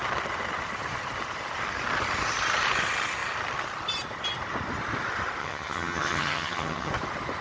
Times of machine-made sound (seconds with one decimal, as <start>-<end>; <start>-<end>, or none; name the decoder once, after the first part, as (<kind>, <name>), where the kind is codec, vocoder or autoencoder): 5.4-6.9 (vocoder, HiFi-GAN)